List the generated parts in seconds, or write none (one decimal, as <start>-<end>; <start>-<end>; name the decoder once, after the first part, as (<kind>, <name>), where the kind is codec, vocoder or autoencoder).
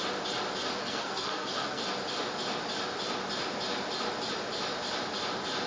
0.8-1.8 (codec, SNAC)